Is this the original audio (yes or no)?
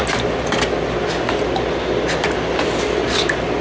yes